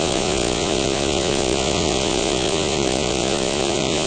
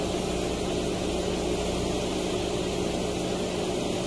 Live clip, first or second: second